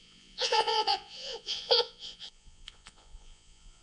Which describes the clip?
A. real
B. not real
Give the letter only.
B